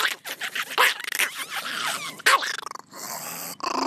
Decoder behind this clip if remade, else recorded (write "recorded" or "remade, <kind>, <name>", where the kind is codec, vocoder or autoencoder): recorded